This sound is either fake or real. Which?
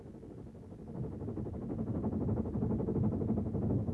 real